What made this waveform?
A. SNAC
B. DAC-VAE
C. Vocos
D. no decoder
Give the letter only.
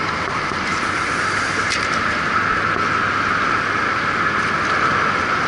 D